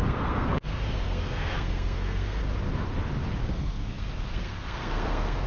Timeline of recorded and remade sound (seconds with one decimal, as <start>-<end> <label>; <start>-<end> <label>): 0.0-2.4 remade; 2.4-3.4 recorded; 3.4-5.5 remade